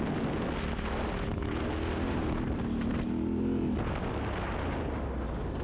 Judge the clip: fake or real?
real